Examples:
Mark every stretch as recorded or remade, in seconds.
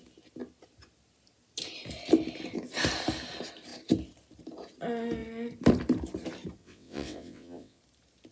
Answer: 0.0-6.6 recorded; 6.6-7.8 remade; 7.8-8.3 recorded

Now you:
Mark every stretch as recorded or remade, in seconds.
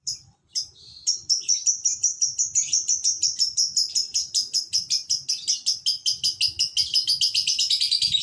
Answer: 0.0-4.1 remade; 4.1-8.2 recorded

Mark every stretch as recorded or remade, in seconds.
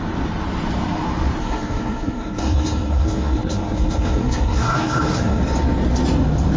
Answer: 0.0-1.4 recorded; 1.4-5.4 remade; 5.4-6.6 recorded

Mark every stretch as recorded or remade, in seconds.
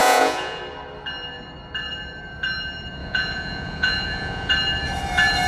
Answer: 0.0-0.6 remade; 0.6-3.0 recorded; 3.0-4.5 remade; 4.5-5.5 recorded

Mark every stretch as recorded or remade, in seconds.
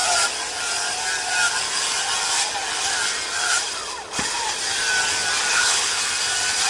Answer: 0.0-5.5 recorded; 5.5-6.0 remade; 6.0-6.7 recorded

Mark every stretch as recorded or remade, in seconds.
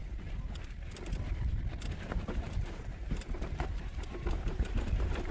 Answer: 0.0-2.3 recorded; 2.3-3.9 remade; 3.9-4.8 recorded; 4.8-5.3 remade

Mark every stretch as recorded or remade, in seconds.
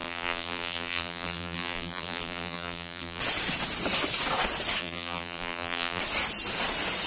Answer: 0.0-3.2 remade; 3.2-4.8 recorded; 4.8-6.0 remade; 6.0-7.1 recorded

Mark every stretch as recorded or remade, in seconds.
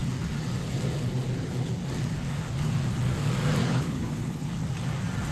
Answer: 0.0-3.6 recorded; 3.6-4.5 remade; 4.5-5.3 recorded